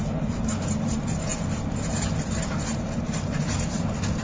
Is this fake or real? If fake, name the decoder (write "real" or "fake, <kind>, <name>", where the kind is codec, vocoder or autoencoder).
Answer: fake, vocoder, BigVGAN v2